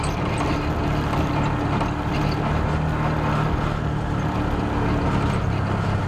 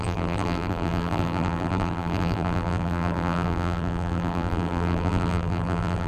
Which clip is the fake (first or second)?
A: second